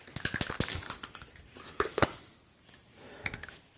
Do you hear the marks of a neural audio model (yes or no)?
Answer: no